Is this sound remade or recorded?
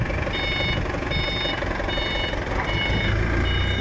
recorded